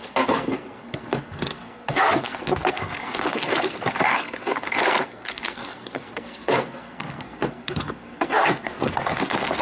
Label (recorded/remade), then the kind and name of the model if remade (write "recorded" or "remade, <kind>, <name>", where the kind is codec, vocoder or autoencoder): remade, codec, SNAC